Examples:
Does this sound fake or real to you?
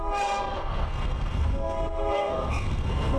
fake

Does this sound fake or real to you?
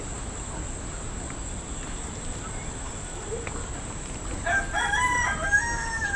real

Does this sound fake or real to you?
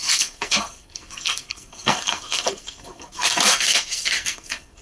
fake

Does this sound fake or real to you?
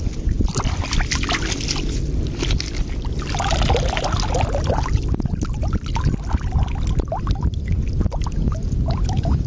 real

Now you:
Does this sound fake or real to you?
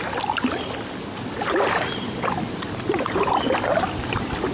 real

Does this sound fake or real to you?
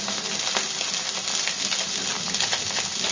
real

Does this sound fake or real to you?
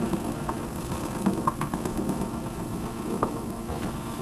fake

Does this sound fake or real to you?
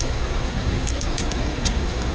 fake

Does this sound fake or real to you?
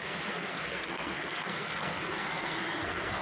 fake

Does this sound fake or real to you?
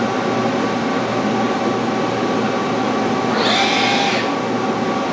real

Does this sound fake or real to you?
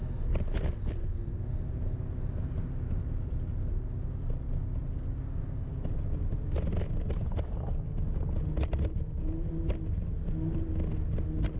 real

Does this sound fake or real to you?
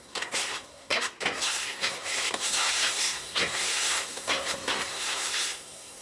fake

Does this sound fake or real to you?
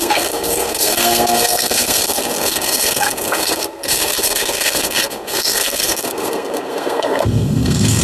fake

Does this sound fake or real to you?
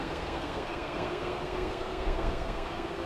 fake